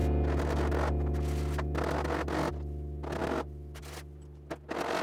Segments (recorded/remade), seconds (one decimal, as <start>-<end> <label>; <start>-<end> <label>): 0.0-5.0 recorded